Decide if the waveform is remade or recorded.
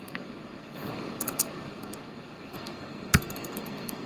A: remade